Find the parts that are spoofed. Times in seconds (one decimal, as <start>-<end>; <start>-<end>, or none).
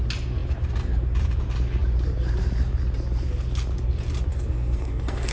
4.3-5.3